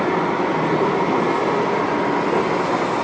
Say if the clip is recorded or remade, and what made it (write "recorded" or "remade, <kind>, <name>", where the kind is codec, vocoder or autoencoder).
recorded